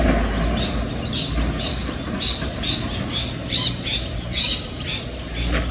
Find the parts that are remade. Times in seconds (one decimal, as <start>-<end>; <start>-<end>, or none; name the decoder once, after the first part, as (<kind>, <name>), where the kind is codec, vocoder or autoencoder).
1.8-5.0 (vocoder, BigVGAN v2)

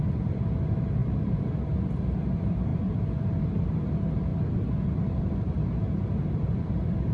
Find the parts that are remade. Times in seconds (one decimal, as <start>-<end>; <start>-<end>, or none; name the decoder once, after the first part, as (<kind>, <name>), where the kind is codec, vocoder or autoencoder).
0.0-4.3 (vocoder, BigVGAN v2); 5.2-7.1

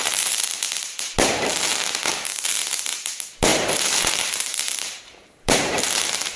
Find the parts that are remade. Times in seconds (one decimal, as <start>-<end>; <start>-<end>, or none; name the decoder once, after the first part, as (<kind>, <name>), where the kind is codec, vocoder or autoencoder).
0.0-1.1 (vocoder, BigVGAN v2); 3.5-6.4

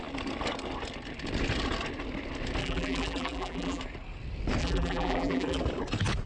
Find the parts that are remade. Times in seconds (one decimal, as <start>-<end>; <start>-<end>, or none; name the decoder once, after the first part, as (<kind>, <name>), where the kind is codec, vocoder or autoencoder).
2.6-3.8 (vocoder, BigVGAN v2); 4.6-5.6

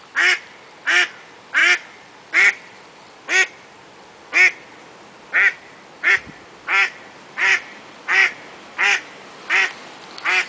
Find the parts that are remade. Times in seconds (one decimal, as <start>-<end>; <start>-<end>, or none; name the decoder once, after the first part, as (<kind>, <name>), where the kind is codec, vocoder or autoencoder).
none

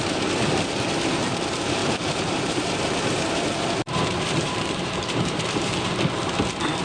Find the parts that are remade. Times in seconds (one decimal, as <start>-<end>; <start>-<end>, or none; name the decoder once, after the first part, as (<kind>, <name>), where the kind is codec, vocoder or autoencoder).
1.8-5.9 (vocoder, BigVGAN v2)

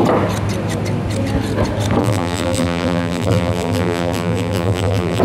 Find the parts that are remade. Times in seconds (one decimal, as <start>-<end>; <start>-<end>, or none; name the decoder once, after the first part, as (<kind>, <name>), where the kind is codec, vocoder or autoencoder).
2.0-5.2 (vocoder, BigVGAN v2)